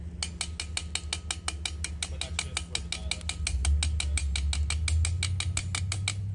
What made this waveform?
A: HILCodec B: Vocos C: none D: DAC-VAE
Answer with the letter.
C